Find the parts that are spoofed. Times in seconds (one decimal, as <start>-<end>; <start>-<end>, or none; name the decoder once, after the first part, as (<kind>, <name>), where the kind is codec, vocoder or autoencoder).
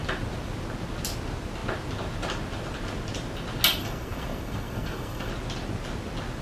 3.8-5.3 (codec, SNAC)